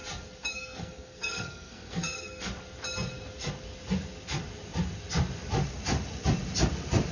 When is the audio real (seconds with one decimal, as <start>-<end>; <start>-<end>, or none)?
0.0-0.5; 2.5-7.1